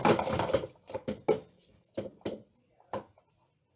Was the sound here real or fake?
real